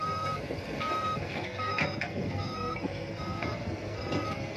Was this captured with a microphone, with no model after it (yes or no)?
no